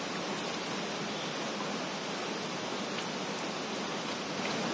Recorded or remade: recorded